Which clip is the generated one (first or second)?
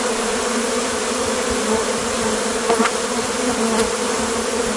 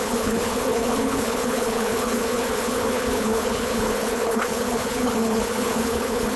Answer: second